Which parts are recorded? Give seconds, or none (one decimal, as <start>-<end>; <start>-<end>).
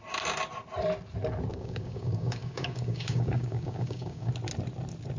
0.0-1.5; 4.3-5.2